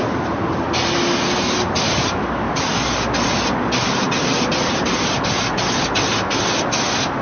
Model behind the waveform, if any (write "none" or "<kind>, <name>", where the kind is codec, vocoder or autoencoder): none